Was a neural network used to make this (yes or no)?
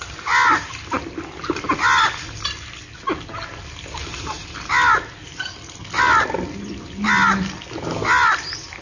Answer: no